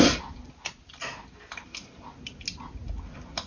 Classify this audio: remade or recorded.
recorded